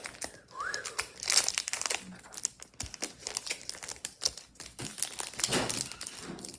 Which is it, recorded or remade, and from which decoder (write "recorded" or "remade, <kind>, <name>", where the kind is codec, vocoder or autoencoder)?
recorded